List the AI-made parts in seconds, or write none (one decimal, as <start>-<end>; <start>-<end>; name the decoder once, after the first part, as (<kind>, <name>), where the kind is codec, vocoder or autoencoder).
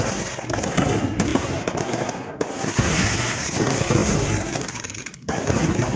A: 0.0-6.0 (codec, SNAC)